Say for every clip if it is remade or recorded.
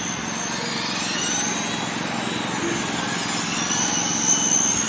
recorded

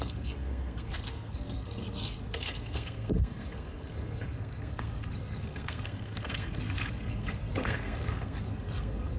remade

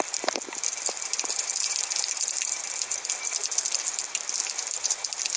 recorded